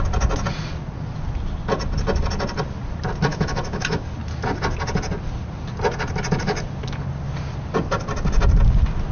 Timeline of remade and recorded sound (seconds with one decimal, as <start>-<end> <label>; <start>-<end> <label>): 0.0-3.3 recorded; 3.3-4.0 remade; 4.0-9.1 recorded

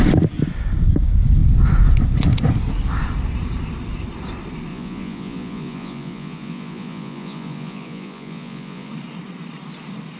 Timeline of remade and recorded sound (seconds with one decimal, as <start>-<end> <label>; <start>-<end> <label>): 0.0-4.7 recorded; 4.7-8.9 remade; 8.9-10.2 recorded

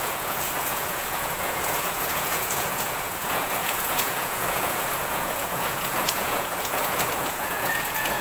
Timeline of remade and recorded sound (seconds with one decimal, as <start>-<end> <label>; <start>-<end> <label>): 0.0-8.2 remade